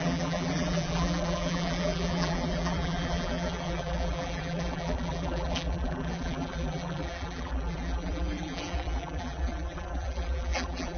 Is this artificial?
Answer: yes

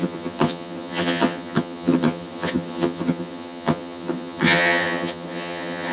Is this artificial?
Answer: yes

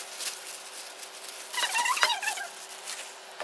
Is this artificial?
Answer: no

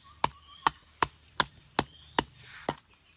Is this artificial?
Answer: no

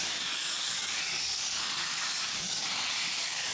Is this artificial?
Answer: yes